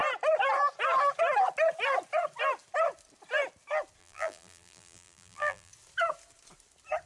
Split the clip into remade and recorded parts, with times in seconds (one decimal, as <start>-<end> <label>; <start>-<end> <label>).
0.0-4.0 recorded; 4.0-5.7 remade; 5.7-7.1 recorded